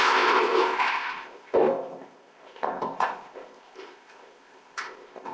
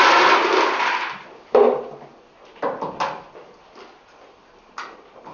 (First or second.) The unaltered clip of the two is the second